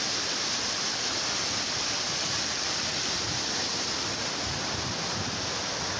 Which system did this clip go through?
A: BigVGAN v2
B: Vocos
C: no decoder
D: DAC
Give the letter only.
C